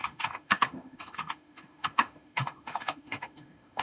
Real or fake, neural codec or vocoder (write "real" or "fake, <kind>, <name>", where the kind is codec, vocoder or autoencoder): fake, autoencoder, DAC-VAE